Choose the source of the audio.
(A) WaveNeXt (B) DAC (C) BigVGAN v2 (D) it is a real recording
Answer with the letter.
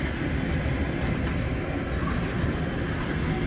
D